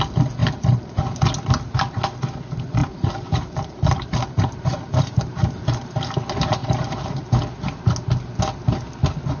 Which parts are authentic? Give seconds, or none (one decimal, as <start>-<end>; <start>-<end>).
0.0-0.4; 1.0-2.8; 6.1-6.6; 7.3-9.4